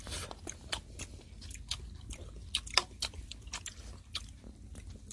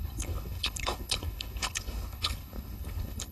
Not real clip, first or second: second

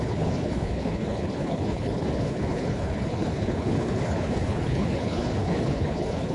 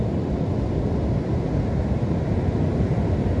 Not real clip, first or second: first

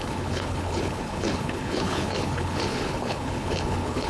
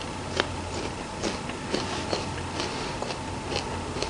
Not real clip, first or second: first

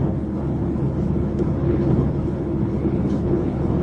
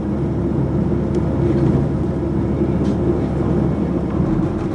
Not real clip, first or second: first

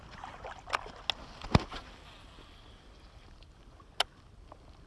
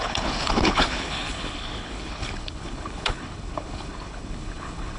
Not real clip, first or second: second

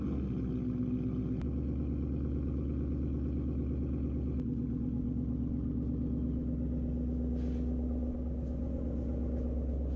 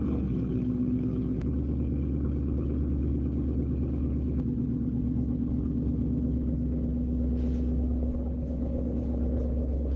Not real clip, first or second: second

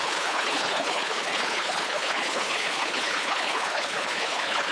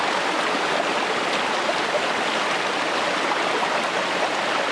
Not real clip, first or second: first